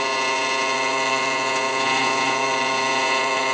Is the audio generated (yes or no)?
yes